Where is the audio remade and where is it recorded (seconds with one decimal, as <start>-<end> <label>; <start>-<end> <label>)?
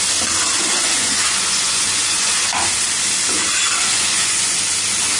0.0-0.7 recorded; 0.7-2.4 remade; 2.4-3.8 recorded; 3.8-4.5 remade; 4.5-5.2 recorded